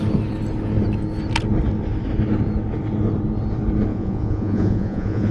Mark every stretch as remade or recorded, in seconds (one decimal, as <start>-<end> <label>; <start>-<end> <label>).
0.0-3.9 recorded; 3.9-5.3 remade